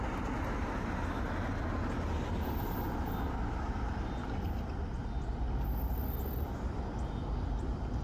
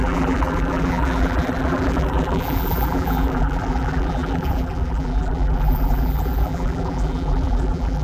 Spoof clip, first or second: second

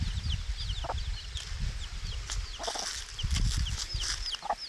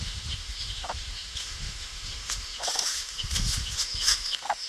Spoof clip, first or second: second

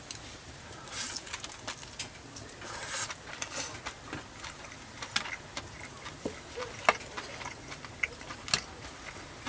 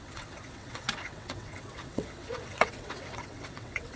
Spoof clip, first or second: second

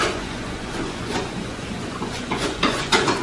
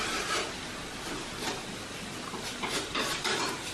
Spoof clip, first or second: first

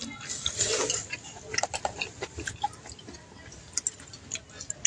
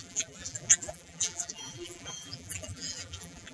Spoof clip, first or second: second